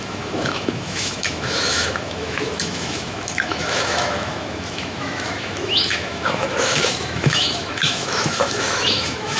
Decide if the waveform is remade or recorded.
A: remade